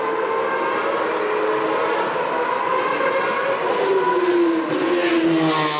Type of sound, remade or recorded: recorded